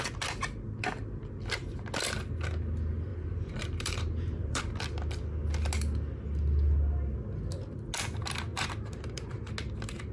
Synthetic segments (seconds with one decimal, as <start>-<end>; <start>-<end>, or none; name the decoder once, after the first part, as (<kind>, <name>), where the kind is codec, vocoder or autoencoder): 3.1-4.6 (vocoder, BigVGAN v2); 8.5-9.5